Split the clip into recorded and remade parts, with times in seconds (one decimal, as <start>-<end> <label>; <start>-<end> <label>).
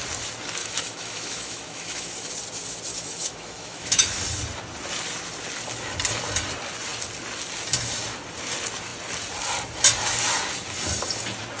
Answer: 0.0-0.6 recorded; 0.6-2.3 remade; 2.3-2.9 recorded; 2.9-4.2 remade; 4.2-11.6 recorded